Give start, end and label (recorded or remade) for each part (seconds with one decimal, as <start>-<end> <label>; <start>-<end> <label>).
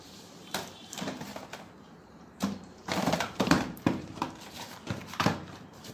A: 0.0-1.3 remade; 1.3-2.1 recorded; 2.1-5.9 remade